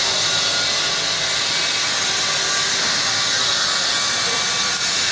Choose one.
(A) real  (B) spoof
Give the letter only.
A